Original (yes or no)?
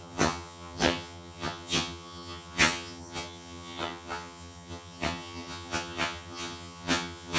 no